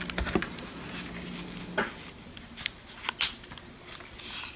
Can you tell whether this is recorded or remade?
recorded